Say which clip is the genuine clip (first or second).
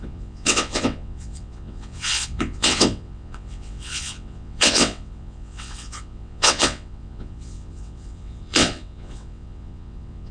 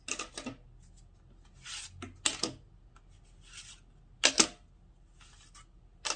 second